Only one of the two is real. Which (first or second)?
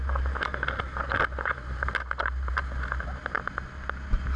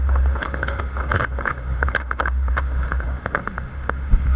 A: first